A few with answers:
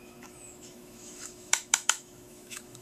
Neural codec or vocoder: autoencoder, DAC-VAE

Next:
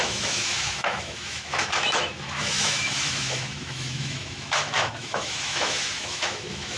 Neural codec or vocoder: autoencoder, DAC-VAE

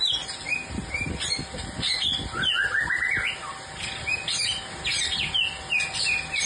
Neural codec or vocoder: none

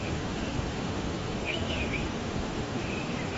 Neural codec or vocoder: autoencoder, DAC-VAE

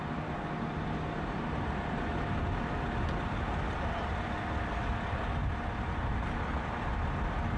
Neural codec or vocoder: none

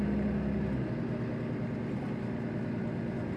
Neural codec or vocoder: none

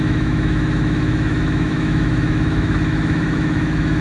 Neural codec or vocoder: autoencoder, DAC-VAE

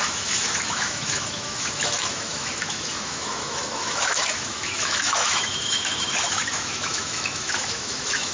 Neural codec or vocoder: autoencoder, DAC-VAE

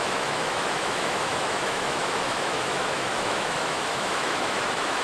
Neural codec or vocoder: autoencoder, DAC-VAE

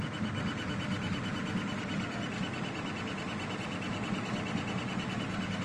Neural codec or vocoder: none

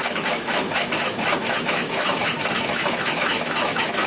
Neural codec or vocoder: autoencoder, DAC-VAE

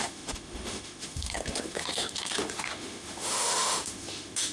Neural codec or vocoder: autoencoder, DAC-VAE